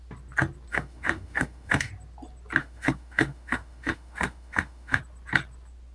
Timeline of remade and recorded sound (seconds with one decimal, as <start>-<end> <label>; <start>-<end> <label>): 0.0-0.7 recorded; 0.7-1.9 remade; 1.9-2.6 recorded; 2.6-5.0 remade; 5.0-5.9 recorded